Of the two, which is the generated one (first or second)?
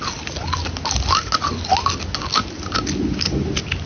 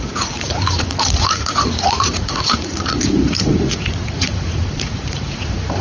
second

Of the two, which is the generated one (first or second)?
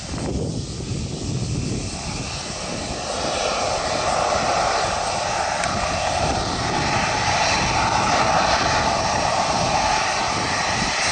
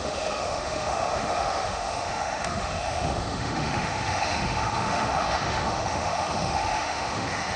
second